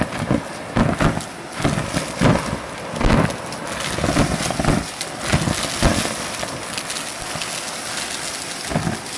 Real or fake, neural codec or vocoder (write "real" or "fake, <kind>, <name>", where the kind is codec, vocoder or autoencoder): real